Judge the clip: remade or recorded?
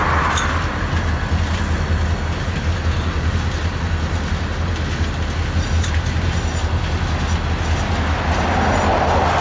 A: recorded